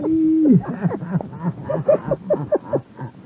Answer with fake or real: real